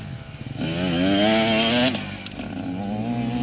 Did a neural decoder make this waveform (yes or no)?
no